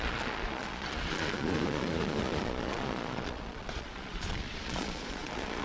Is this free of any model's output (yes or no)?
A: no